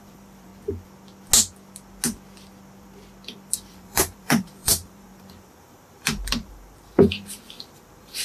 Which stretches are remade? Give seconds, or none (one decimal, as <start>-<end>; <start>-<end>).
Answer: 0.0-0.5; 3.7-8.2